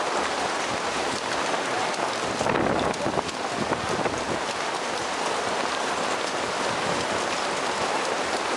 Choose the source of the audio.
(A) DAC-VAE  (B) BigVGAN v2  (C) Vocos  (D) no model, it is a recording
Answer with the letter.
B